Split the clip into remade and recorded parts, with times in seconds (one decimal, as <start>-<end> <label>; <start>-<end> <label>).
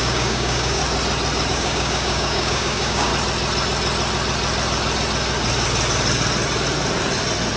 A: 0.0-0.8 remade; 0.8-1.5 recorded; 1.5-3.1 remade; 3.1-7.6 recorded